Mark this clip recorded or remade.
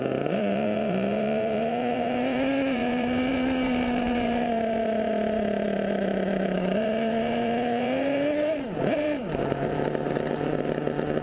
remade